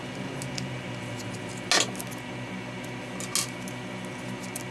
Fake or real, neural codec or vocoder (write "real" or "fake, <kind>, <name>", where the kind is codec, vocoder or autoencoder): real